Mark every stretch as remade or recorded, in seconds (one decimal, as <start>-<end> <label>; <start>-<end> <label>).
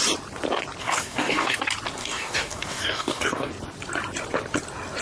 0.0-0.8 recorded; 0.8-1.6 remade; 1.6-2.0 recorded; 2.0-3.5 remade; 3.5-5.0 recorded